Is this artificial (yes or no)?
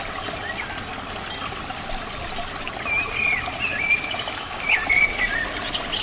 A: no